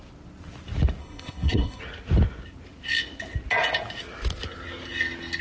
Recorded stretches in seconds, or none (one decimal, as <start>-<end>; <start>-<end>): 0.0-1.0; 1.8-5.4